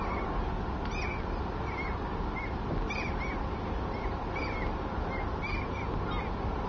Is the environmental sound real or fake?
real